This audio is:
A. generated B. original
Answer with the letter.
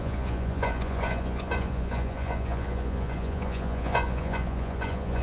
A